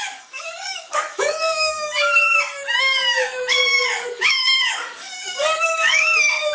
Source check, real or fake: fake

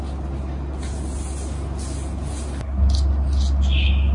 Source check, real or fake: real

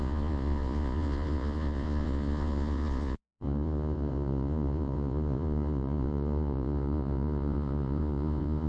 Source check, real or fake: fake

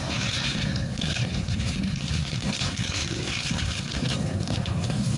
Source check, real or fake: fake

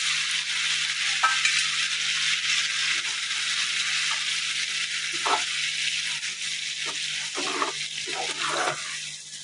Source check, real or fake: real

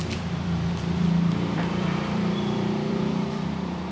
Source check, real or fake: fake